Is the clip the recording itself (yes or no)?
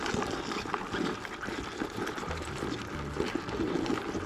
yes